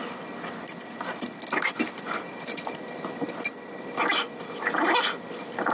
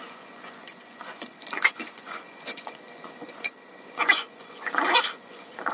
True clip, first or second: first